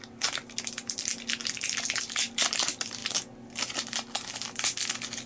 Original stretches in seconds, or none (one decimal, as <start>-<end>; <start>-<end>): 0.0-5.3